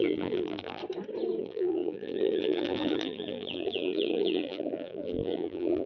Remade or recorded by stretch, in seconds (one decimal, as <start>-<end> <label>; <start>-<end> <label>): 0.0-0.8 remade; 0.8-1.4 recorded; 1.4-5.9 remade

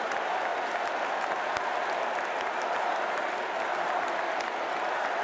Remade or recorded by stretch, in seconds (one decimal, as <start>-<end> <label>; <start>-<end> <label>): 0.0-5.2 recorded